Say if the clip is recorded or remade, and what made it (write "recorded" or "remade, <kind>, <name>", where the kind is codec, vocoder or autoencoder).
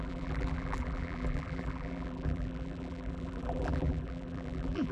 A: remade, vocoder, BigVGAN v2